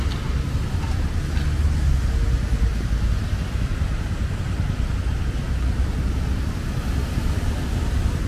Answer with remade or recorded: recorded